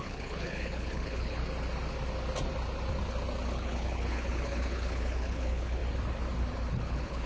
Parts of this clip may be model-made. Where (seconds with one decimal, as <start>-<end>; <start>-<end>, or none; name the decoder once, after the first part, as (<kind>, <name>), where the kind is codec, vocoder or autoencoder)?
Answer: 0.0-1.4 (codec, HILCodec); 3.5-5.8; 6.7-7.3